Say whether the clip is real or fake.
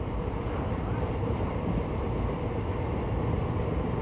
real